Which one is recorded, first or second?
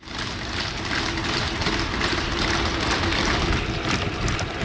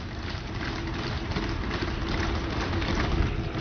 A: second